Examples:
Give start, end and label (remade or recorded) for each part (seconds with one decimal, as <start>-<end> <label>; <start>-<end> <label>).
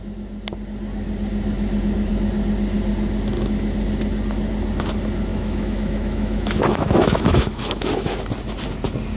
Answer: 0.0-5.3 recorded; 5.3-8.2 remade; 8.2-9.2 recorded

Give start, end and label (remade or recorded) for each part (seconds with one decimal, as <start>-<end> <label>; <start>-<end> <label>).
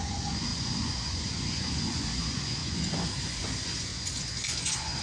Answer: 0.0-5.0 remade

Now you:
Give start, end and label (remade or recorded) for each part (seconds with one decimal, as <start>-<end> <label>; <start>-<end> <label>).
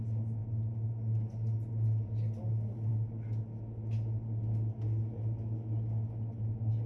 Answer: 0.0-6.9 recorded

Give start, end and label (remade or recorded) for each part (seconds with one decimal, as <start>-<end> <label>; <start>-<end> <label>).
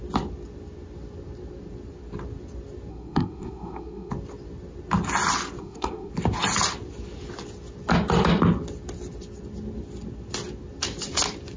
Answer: 0.0-2.9 recorded; 2.9-4.1 remade; 4.1-5.6 recorded; 5.6-6.1 remade; 6.1-11.6 recorded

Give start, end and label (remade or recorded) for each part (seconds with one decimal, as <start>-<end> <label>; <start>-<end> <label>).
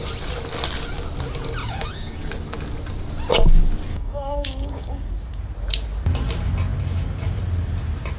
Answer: 0.0-1.6 recorded; 1.6-2.3 remade; 2.3-3.9 recorded; 3.9-5.1 remade; 5.1-8.2 recorded